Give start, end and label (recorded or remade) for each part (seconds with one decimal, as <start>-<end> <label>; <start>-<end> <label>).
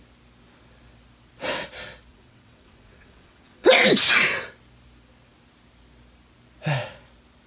0.0-2.1 recorded; 2.1-3.9 remade; 3.9-7.5 recorded